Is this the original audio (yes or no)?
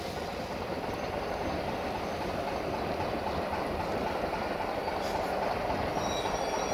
yes